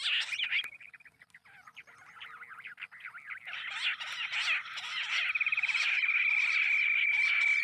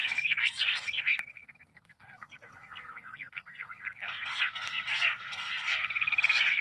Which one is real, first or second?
first